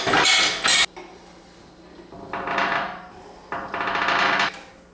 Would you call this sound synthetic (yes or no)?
no